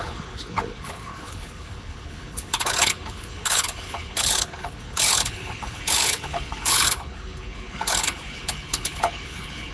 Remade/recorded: remade